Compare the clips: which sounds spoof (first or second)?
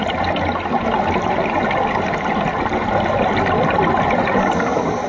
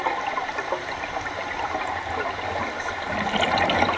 second